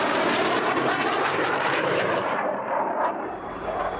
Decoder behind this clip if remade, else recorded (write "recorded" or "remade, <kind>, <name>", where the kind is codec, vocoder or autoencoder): remade, vocoder, BigVGAN v2